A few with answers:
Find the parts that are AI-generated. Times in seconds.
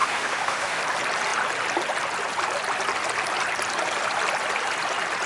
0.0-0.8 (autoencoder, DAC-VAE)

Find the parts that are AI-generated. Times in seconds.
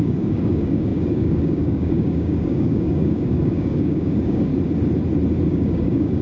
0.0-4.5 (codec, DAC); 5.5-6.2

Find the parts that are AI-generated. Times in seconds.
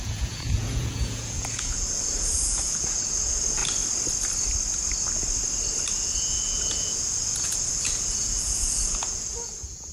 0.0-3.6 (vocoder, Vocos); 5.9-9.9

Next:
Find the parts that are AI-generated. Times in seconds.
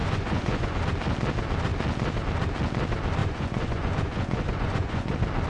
0.0-0.8 (vocoder, Vocos); 3.2-5.1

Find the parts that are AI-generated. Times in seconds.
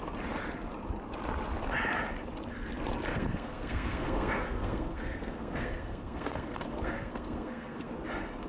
3.1-7.9 (codec, SNAC)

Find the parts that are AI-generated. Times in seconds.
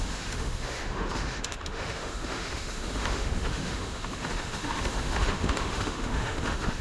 0.0-6.8 (autoencoder, DAC-VAE)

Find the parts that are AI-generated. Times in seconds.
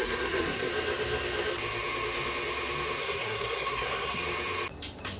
0.0-0.7 (codec, SNAC); 3.0-4.2